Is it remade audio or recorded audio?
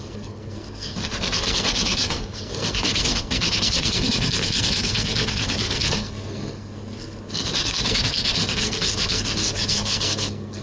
remade